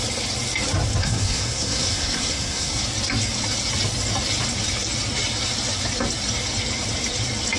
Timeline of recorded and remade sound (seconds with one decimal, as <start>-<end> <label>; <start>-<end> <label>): 0.0-1.0 recorded; 1.0-2.8 remade; 2.8-7.6 recorded